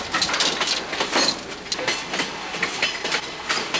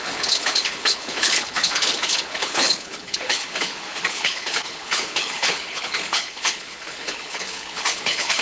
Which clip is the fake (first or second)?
second